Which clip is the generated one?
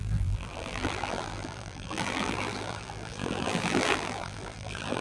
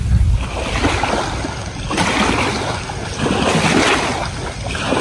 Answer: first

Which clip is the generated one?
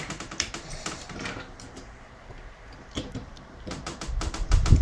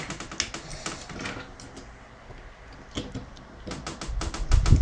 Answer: first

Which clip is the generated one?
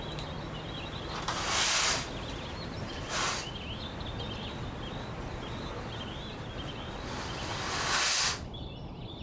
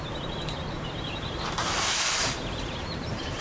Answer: second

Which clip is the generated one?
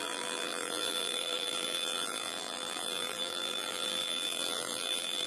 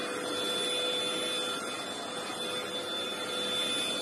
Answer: first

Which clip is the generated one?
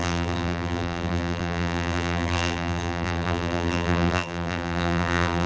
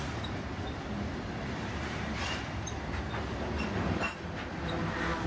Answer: first